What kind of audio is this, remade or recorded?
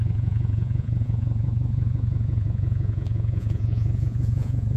remade